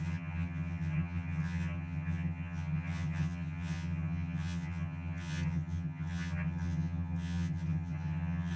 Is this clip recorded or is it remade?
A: remade